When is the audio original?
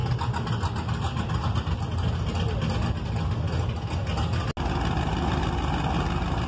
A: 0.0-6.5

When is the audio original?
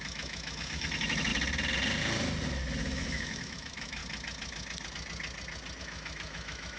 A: 1.3-2.8; 4.0-5.8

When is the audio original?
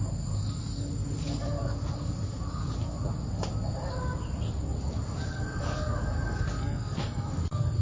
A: 0.0-6.6; 7.3-7.8